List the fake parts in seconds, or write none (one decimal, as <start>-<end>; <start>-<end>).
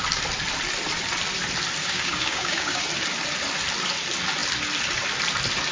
1.8-2.9